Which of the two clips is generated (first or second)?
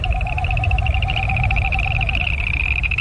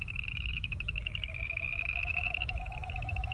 second